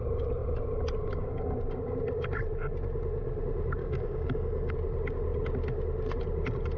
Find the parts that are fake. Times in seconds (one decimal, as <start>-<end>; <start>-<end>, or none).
3.8-4.7